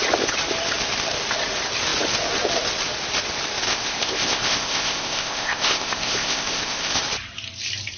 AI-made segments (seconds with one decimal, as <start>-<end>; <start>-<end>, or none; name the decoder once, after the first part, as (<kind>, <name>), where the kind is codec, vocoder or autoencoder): 3.7-7.0 (codec, ZipCodec)